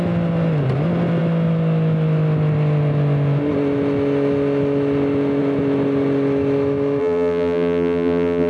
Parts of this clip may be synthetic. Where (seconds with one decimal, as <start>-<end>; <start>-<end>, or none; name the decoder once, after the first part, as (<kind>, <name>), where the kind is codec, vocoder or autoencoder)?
7.0-8.5 (vocoder, BigVGAN v2)